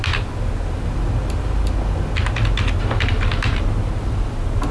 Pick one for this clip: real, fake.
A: real